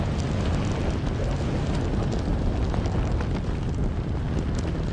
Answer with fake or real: real